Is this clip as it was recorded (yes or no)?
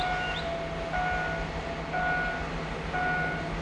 yes